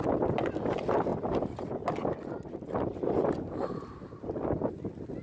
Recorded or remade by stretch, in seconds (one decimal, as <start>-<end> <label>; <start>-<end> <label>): 0.0-5.2 recorded